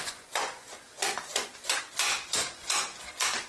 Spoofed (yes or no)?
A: yes